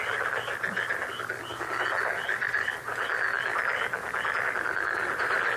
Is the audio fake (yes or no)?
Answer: no